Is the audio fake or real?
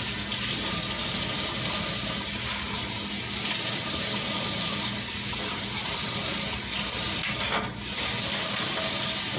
real